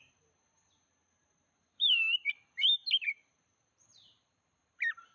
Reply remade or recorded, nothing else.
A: remade